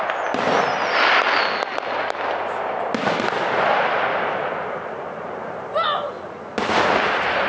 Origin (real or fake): real